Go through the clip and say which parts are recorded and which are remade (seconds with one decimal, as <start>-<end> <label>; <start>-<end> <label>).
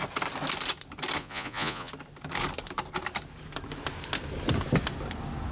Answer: 0.0-1.2 recorded; 1.2-1.9 remade; 1.9-5.5 recorded